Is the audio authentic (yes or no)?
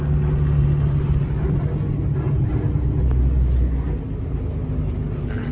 yes